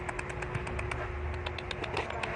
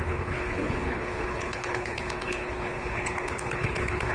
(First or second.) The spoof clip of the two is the second